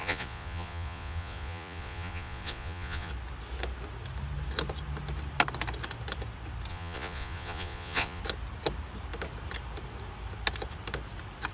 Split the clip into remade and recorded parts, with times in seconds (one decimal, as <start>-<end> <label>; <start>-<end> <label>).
0.0-3.1 remade; 3.1-6.7 recorded; 6.7-8.2 remade; 8.2-11.5 recorded